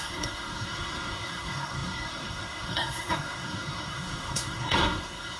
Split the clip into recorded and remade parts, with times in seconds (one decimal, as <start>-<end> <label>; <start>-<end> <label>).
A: 0.0-5.4 remade